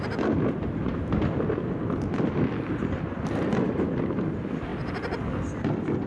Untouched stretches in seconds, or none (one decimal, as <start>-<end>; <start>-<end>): 0.0-6.1